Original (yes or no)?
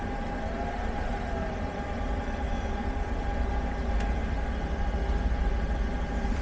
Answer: yes